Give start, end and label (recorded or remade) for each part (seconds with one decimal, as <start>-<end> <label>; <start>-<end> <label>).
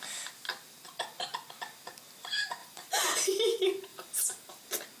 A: 0.0-2.6 recorded; 2.6-3.3 remade; 3.3-3.9 recorded; 3.9-4.5 remade; 4.5-5.0 recorded